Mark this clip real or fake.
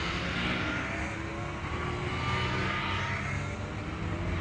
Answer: real